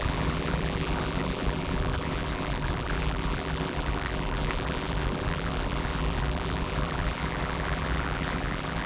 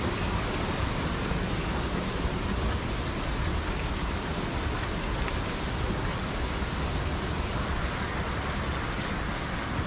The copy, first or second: first